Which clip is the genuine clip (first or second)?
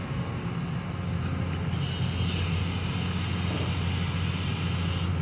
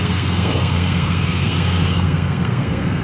first